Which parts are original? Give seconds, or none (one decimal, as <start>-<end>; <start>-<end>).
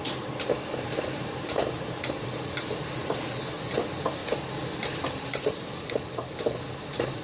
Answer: 4.2-5.1